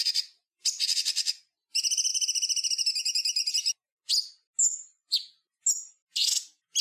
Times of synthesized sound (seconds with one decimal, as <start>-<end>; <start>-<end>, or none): none